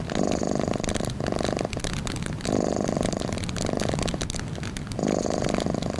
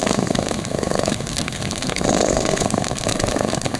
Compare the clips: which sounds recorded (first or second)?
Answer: first